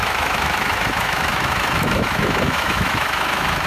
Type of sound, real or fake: fake